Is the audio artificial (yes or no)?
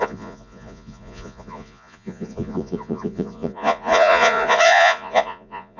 yes